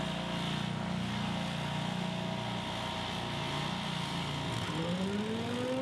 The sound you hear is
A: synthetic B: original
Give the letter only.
B